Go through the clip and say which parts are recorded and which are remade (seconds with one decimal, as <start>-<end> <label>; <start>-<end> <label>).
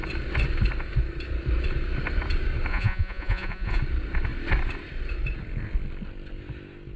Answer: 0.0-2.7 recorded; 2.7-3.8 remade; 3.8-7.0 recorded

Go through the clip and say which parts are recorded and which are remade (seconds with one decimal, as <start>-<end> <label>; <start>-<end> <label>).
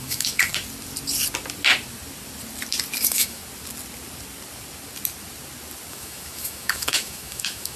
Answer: 0.0-0.5 remade; 0.5-3.0 recorded; 3.0-3.4 remade; 3.4-5.9 recorded; 5.9-7.8 remade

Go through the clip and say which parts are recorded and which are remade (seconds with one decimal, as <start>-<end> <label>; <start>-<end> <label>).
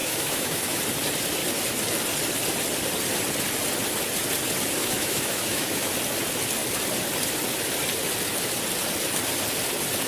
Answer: 0.0-0.8 remade; 0.8-4.8 recorded; 4.8-5.9 remade; 5.9-10.1 recorded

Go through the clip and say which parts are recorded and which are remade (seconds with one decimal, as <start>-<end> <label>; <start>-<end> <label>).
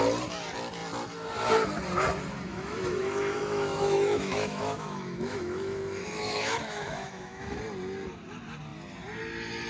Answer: 0.0-2.5 recorded; 2.5-7.6 remade; 7.6-9.7 recorded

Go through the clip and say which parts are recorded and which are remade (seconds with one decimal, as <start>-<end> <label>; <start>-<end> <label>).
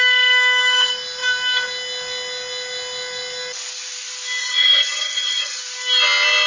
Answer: 0.0-4.4 recorded; 4.4-5.6 remade; 5.6-6.5 recorded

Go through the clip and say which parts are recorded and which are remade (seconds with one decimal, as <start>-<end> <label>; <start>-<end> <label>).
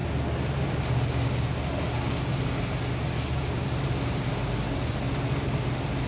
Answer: 0.0-6.1 recorded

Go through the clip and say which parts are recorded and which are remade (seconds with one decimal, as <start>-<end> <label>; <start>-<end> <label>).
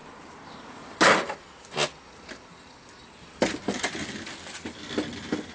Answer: 0.0-5.5 recorded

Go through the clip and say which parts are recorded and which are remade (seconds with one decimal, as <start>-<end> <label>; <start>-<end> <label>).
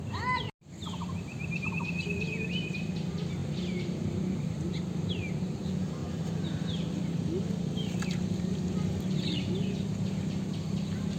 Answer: 0.0-3.4 recorded; 3.4-4.7 remade; 4.7-6.0 recorded; 6.0-11.2 remade